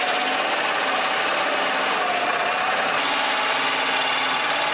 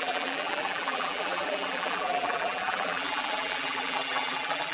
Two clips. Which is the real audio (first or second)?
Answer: first